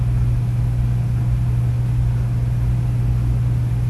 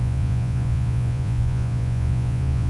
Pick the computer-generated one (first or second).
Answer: second